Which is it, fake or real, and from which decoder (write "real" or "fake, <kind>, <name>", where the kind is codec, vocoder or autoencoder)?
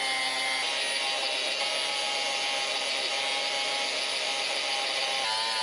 real